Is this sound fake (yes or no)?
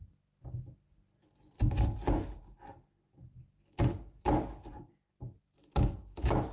no